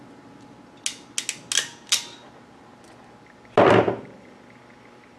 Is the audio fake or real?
real